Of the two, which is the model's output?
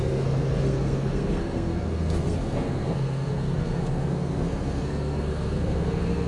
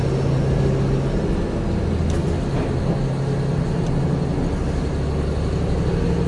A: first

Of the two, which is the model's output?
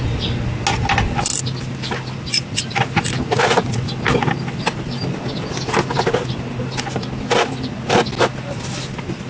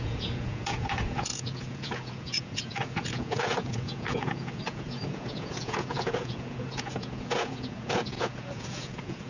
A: second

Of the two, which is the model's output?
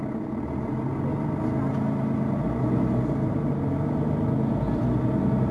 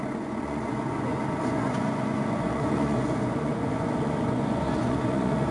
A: second